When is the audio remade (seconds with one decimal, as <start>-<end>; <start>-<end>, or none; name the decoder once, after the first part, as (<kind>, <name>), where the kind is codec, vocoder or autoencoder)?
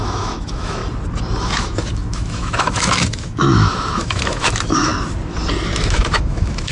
0.0-0.8 (autoencoder, DAC-VAE); 1.4-4.9; 5.8-6.7